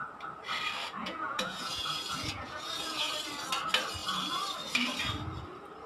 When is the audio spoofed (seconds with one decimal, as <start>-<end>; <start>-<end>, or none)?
1.0-3.1